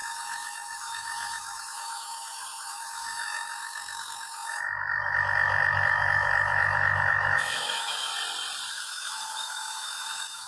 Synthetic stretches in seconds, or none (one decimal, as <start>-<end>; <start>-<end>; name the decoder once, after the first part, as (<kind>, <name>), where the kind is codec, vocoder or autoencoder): 0.0-8.1 (autoencoder, DAC-VAE); 8.7-10.5